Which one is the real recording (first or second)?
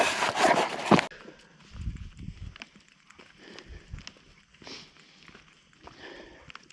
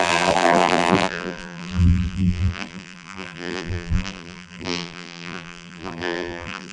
first